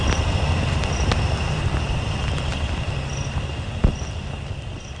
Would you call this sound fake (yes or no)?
no